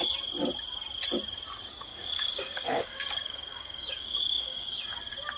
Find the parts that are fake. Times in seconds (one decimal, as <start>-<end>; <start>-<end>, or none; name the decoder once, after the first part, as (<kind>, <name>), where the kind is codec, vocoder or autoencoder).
1.9-4.8 (codec, DAC)